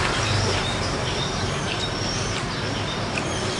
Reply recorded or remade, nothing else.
remade